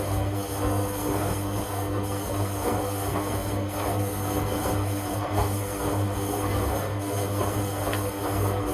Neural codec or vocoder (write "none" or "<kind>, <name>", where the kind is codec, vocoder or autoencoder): codec, SNAC